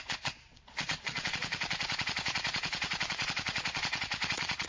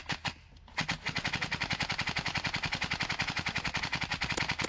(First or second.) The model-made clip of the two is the first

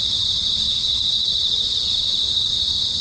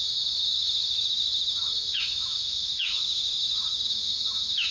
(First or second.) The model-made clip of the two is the second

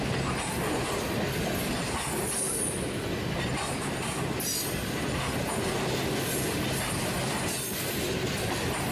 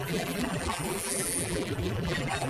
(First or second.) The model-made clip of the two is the second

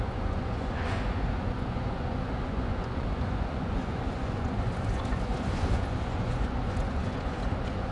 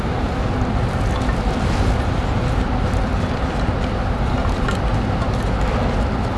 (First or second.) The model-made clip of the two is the first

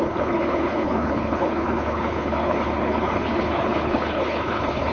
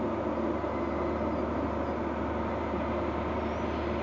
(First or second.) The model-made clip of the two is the first